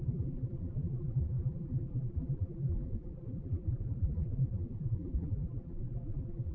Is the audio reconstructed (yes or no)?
yes